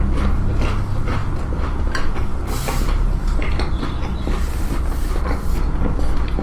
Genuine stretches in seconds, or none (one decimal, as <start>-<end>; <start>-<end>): 0.0-6.4